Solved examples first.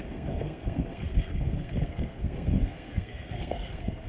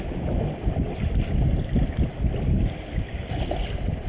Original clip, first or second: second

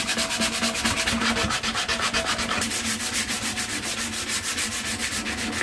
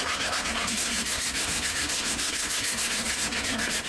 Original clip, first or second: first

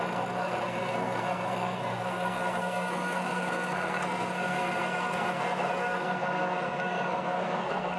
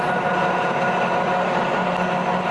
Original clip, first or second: second